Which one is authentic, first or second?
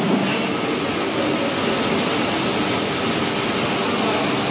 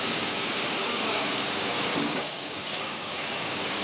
first